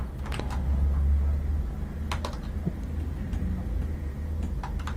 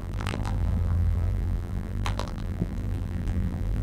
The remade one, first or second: second